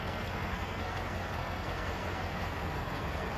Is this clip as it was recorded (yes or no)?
no